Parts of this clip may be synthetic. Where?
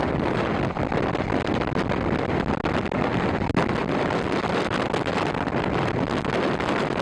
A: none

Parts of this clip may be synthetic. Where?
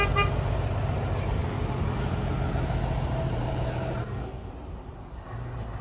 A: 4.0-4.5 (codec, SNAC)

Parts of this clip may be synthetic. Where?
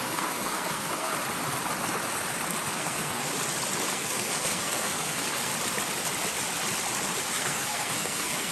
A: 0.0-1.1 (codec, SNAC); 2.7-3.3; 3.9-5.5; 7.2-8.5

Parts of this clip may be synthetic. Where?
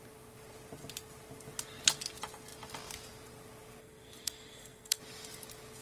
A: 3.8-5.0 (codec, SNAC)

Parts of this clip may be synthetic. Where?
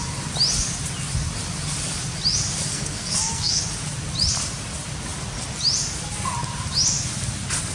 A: 2.7-3.6 (codec, SNAC)